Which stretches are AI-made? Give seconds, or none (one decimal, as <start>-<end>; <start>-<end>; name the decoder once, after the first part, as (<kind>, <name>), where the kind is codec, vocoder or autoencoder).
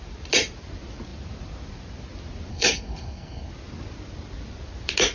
2.5-3.5 (codec, SNAC)